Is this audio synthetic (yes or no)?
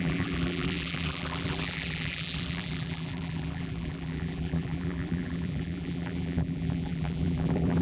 yes